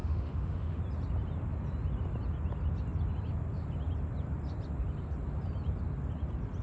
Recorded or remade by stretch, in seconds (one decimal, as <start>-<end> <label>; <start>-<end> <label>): 0.0-0.8 remade; 0.8-6.6 recorded